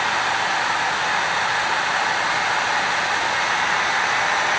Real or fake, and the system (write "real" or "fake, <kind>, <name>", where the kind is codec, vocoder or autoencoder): real